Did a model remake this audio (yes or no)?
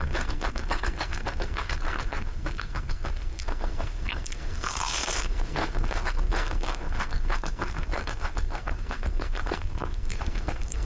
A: yes